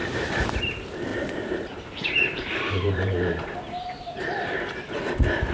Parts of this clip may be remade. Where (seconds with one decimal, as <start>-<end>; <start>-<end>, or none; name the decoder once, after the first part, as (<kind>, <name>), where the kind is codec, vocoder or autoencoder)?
0.0-0.6 (vocoder, BigVGAN v2); 1.1-4.2